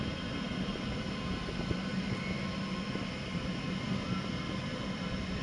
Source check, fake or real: real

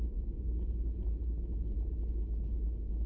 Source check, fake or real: real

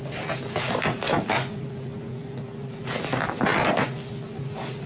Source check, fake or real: real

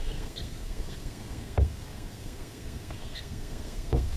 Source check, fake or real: fake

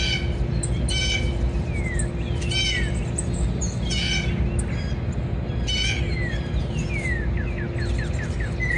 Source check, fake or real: real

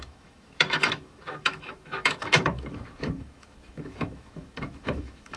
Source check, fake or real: fake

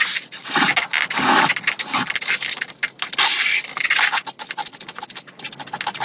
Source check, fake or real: real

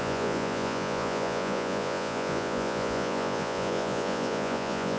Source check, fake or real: fake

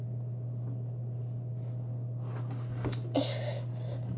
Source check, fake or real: real